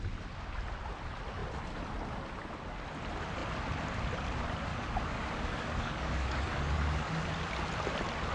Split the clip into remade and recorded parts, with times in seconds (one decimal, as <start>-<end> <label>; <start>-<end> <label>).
0.0-4.7 recorded; 4.7-7.3 remade; 7.3-8.3 recorded